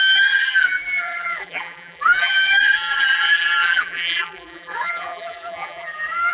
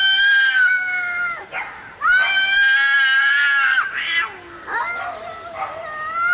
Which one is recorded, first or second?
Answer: second